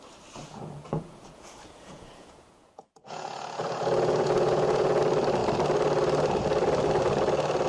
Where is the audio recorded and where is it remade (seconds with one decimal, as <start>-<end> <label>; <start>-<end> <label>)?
0.0-0.4 recorded; 0.4-5.0 remade; 5.0-7.7 recorded